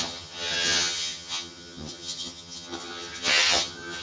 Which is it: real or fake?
fake